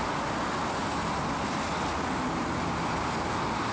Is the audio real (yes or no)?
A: yes